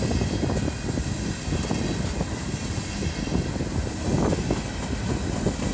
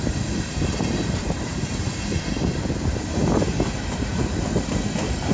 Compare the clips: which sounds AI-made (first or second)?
second